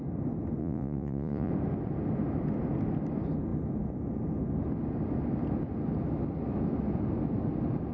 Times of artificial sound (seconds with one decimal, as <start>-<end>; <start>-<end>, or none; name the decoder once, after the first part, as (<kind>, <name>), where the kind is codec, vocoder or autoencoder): 0.6-1.5 (vocoder, Vocos)

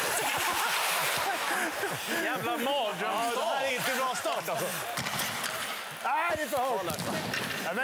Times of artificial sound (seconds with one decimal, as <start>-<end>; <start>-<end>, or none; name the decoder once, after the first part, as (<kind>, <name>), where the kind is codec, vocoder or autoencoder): none

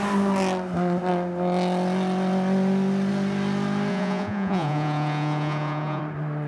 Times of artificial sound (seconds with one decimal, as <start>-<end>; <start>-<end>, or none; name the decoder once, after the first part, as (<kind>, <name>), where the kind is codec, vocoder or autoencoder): 3.9-6.0 (vocoder, Vocos)

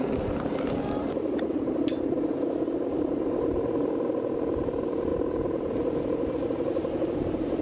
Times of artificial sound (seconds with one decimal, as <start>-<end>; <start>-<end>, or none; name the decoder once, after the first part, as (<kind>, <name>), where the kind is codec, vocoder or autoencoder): none

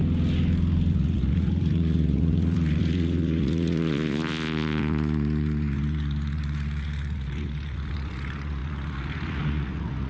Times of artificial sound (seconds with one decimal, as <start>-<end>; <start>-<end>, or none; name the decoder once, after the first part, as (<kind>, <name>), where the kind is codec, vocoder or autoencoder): 0.9-10.1 (vocoder, Vocos)

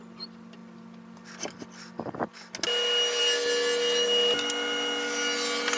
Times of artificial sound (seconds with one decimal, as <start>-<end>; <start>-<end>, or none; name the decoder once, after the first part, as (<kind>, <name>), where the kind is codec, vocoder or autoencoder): none